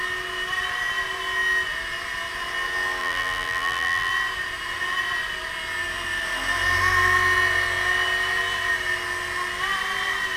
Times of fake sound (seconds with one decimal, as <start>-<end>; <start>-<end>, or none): 3.0-4.1